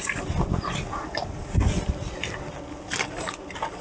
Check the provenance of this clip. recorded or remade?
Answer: recorded